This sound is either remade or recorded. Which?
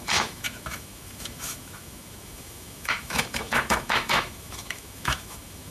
remade